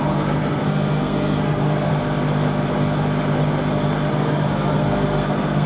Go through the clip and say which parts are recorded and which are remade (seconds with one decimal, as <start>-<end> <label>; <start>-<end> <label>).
0.0-1.9 remade; 1.9-4.1 recorded; 4.1-5.7 remade